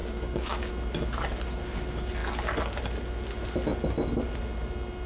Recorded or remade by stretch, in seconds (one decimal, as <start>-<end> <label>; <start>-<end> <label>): 0.0-0.7 remade; 0.7-5.1 recorded